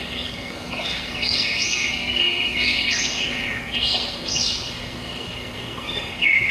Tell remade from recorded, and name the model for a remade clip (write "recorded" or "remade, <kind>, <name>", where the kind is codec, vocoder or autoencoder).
remade, codec, SNAC